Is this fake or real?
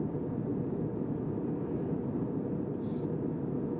real